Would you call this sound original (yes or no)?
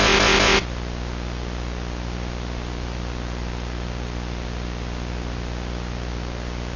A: yes